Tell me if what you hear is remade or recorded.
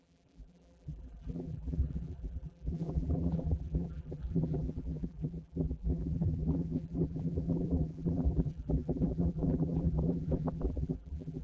remade